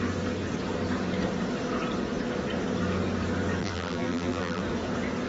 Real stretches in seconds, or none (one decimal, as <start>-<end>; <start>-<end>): 0.0-3.6; 4.6-5.3